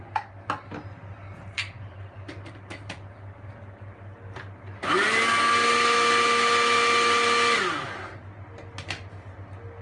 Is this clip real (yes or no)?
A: yes